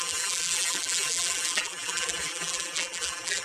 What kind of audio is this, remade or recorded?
remade